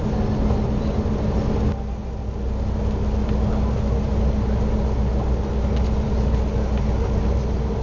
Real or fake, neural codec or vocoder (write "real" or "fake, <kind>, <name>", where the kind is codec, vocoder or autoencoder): real